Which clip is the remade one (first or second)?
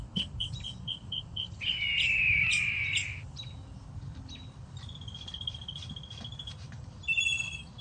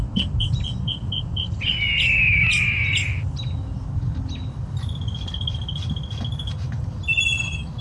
first